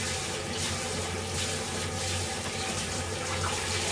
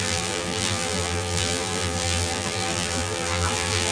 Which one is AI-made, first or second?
second